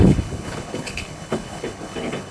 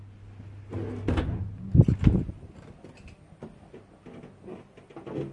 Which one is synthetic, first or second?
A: first